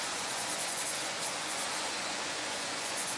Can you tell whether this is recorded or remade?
remade